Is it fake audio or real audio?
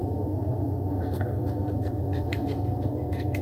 fake